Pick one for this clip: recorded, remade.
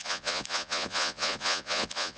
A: remade